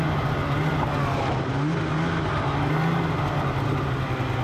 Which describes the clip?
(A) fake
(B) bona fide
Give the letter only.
B